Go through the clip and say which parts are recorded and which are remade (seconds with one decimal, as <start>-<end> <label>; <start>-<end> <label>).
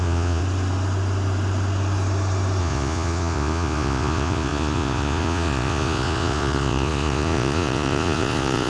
0.0-0.4 remade; 0.4-2.6 recorded; 2.6-8.7 remade